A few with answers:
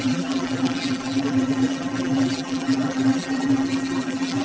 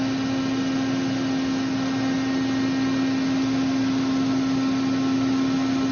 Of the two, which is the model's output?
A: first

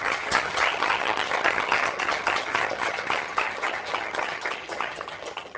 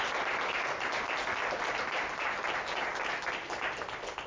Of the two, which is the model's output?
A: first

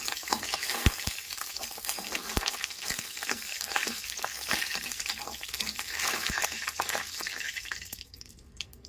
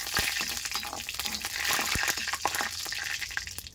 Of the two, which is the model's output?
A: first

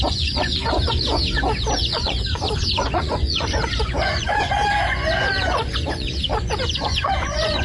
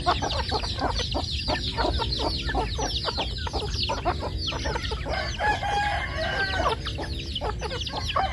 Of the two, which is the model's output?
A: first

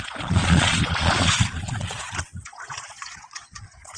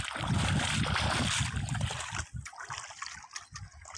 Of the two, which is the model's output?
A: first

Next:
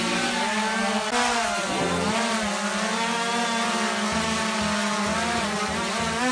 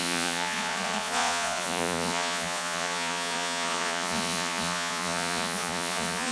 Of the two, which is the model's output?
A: second